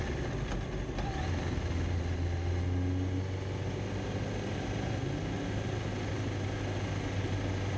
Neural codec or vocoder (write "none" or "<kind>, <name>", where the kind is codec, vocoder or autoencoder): none